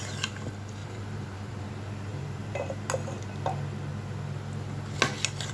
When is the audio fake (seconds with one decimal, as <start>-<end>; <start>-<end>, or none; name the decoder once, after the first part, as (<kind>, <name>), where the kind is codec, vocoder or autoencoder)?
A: 0.8-1.7 (vocoder, BigVGAN v2); 2.1-2.8